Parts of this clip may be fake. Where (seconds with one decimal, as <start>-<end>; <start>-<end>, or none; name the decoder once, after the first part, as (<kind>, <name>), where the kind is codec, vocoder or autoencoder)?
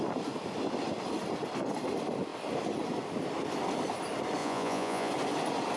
4.4-5.1 (vocoder, Vocos)